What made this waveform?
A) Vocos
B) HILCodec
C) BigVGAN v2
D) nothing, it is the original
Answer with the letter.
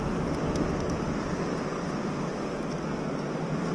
D